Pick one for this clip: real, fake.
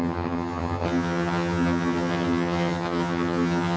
fake